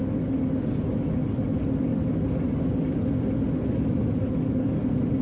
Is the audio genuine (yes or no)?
yes